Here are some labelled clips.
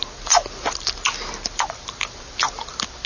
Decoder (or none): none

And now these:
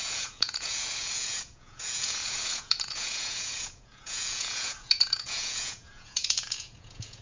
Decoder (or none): vocoder, Vocos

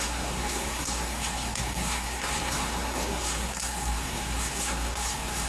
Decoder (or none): codec, SNAC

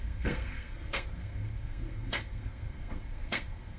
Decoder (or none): codec, SNAC